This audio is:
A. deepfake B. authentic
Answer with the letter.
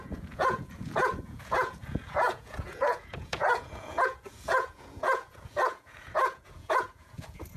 A